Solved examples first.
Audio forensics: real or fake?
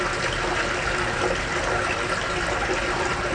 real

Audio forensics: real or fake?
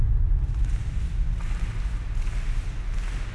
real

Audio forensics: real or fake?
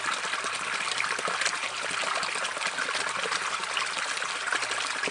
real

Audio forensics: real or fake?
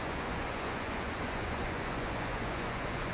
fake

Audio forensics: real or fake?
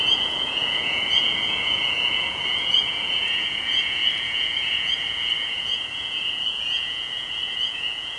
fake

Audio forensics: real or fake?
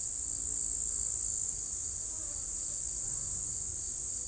real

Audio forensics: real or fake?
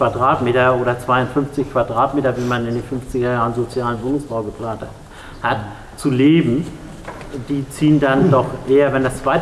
real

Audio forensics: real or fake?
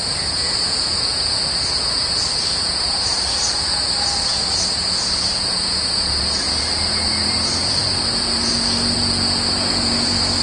fake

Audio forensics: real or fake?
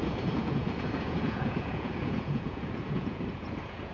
fake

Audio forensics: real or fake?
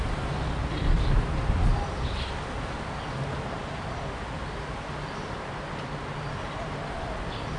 real